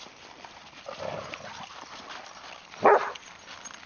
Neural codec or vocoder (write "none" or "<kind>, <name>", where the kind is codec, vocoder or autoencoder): none